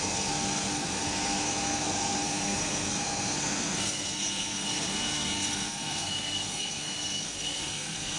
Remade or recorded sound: remade